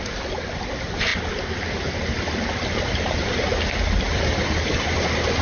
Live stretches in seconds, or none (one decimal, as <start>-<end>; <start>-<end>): 0.0-5.4